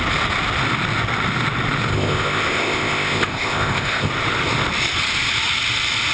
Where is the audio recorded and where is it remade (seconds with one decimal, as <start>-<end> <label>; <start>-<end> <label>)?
0.0-1.9 recorded; 1.9-4.1 remade; 4.1-6.1 recorded